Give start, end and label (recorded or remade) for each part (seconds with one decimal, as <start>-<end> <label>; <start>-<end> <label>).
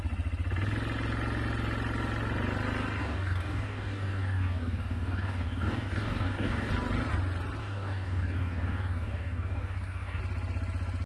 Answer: 0.0-3.0 recorded; 3.0-6.7 remade; 6.7-7.6 recorded; 7.6-10.2 remade; 10.2-11.1 recorded